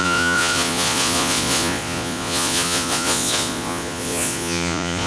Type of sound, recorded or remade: remade